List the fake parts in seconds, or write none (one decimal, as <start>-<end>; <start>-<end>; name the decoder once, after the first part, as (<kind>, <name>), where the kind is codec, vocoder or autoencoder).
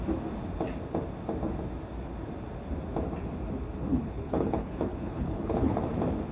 3.9-5.8 (codec, HILCodec)